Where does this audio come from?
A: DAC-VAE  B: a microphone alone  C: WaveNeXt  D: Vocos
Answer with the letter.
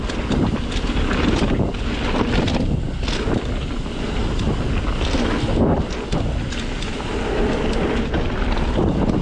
B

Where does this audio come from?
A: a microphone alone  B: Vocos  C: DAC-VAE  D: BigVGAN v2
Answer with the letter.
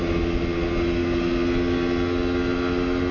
A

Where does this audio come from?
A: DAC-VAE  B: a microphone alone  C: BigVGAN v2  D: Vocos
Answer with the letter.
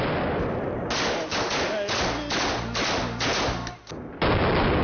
B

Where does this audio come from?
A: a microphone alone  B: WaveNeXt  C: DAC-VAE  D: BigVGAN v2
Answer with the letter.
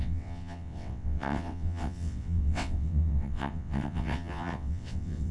B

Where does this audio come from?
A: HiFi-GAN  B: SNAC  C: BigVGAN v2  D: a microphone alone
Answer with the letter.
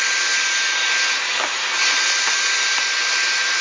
D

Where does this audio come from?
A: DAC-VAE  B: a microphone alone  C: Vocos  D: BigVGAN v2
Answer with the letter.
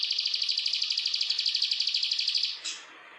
B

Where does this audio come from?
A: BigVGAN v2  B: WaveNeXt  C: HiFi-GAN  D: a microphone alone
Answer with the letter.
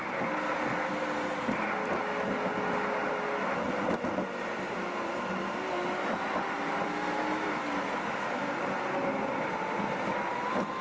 D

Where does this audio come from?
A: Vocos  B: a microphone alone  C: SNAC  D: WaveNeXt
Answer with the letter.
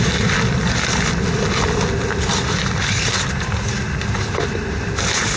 B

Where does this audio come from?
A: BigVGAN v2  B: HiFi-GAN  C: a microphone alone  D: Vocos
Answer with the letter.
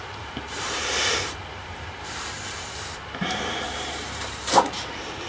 A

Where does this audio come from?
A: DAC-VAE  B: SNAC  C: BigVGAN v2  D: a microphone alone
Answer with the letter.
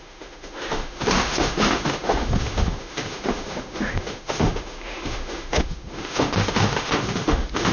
A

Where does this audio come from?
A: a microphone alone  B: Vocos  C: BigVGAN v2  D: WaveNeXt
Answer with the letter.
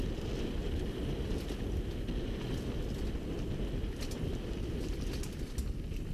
A